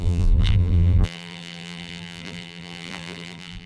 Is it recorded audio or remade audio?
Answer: remade